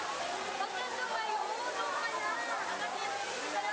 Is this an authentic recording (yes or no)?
yes